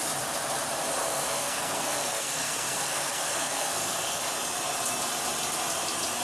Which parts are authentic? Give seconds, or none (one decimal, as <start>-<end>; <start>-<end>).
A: 0.0-1.0; 4.2-6.2